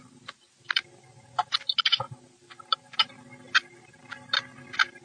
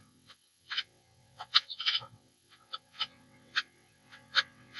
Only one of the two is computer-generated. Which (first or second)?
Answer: second